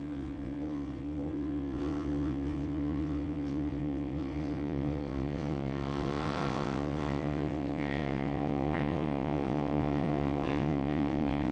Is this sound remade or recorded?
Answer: remade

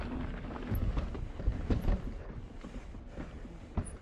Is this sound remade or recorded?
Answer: recorded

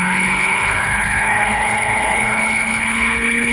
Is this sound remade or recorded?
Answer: remade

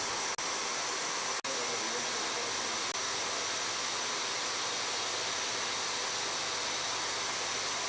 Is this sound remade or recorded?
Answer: recorded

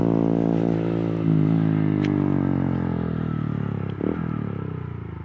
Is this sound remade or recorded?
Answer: recorded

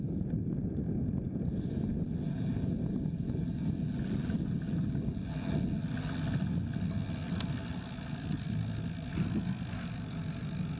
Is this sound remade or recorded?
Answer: recorded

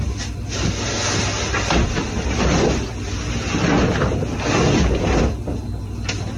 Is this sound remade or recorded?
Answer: recorded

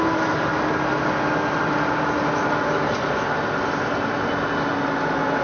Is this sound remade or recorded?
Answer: recorded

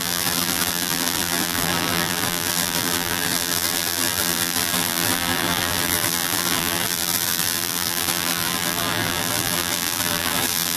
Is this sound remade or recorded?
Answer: remade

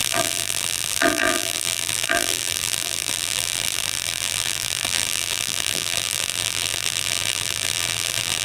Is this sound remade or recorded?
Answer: remade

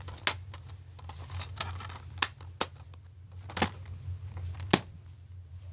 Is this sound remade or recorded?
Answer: recorded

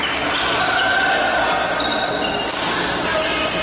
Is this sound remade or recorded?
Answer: recorded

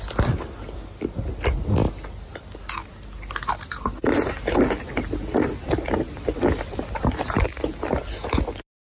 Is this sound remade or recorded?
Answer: recorded